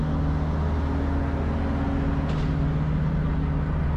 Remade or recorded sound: recorded